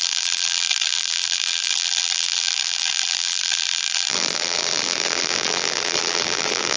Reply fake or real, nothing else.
fake